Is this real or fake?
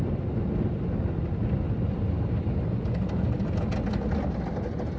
real